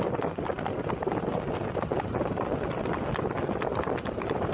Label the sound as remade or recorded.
recorded